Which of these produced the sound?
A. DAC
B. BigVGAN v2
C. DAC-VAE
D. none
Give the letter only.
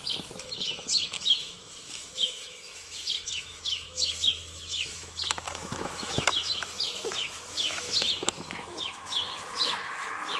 C